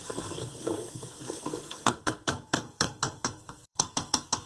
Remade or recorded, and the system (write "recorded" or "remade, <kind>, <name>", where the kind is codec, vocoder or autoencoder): remade, codec, SNAC